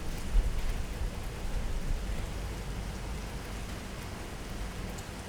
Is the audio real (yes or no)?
yes